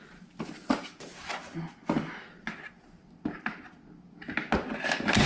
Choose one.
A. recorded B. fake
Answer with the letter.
A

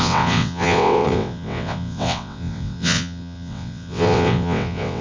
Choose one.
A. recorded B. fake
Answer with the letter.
B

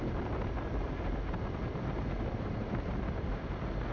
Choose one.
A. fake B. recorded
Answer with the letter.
B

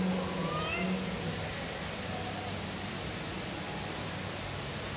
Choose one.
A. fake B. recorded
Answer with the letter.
B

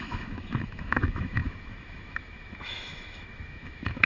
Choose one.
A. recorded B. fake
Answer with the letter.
B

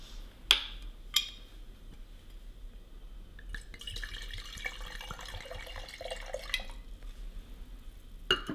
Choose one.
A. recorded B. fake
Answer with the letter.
A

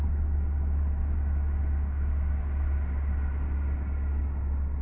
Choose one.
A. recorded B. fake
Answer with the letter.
A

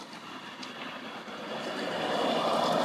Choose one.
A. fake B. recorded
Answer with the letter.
B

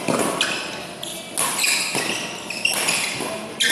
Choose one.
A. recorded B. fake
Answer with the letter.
A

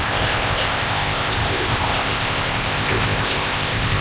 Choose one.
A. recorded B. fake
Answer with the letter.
B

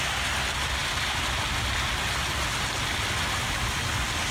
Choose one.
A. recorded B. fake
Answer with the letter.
A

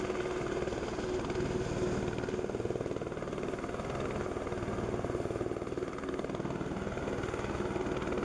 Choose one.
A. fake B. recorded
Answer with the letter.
B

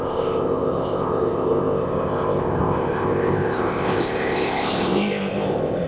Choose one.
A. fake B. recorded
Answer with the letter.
A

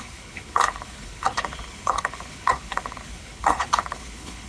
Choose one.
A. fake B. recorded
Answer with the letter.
A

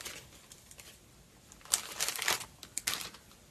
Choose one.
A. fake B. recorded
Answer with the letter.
B